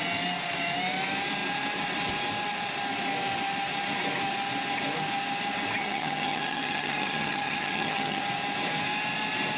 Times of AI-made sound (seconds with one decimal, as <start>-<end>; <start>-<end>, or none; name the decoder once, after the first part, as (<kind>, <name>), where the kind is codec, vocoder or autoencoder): 5.8-8.2 (vocoder, HiFi-GAN)